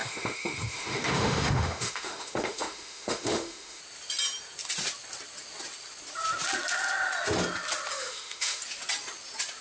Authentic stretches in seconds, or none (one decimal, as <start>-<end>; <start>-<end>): 3.8-7.9; 8.6-9.6